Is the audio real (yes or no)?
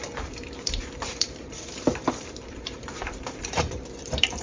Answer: no